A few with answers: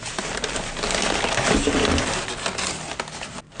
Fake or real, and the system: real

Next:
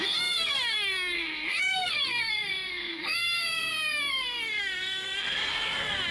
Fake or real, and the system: fake, codec, SNAC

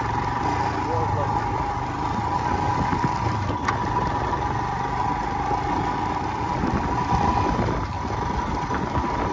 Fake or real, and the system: real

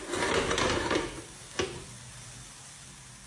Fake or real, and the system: real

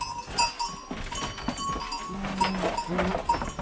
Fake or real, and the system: real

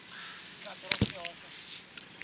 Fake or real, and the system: real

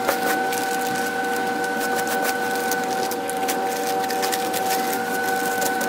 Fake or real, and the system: real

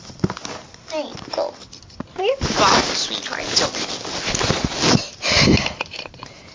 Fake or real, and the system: real